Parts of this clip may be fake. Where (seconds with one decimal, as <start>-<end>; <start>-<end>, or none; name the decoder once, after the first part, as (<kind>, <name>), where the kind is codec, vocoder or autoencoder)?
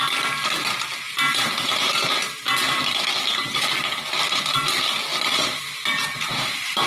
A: 1.3-2.4 (vocoder, BigVGAN v2); 5.1-5.6